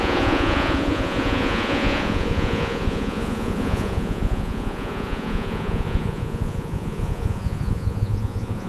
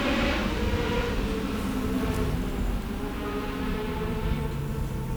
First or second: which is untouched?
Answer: second